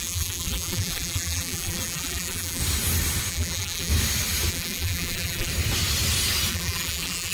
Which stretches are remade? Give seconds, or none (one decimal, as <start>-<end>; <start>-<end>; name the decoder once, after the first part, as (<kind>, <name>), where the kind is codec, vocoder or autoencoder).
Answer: 0.0-2.6 (vocoder, BigVGAN v2); 3.3-3.9; 4.5-5.5; 6.5-7.3